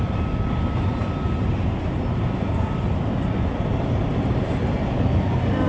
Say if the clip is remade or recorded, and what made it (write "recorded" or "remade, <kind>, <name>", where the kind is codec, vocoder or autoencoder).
recorded